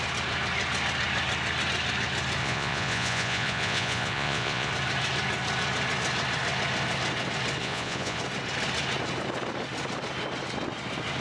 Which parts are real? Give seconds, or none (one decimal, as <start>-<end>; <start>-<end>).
0.0-2.4; 4.7-7.6; 8.2-11.2